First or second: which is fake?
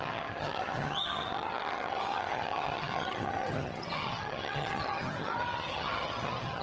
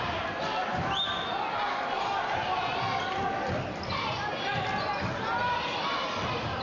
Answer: first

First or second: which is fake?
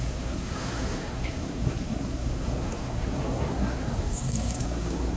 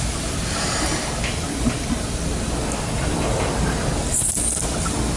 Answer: first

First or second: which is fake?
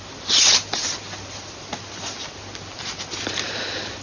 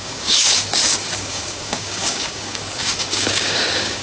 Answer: second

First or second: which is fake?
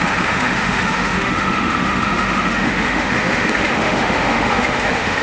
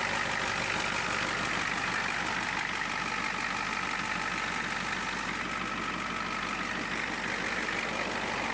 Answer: first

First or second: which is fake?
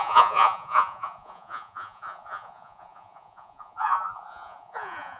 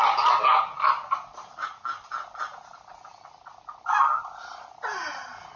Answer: first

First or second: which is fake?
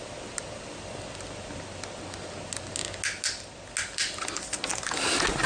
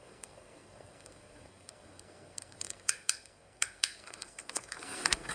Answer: second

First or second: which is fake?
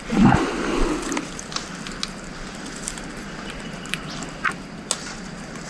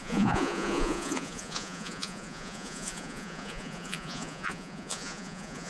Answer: second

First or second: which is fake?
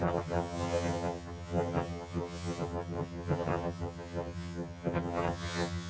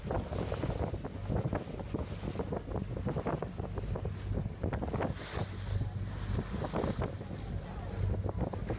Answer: first